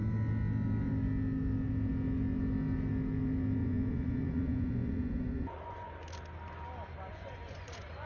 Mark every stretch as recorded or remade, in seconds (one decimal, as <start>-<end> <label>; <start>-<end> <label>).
0.0-3.6 recorded; 3.6-5.9 remade; 5.9-7.1 recorded; 7.1-8.1 remade